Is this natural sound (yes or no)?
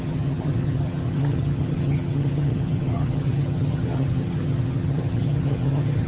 no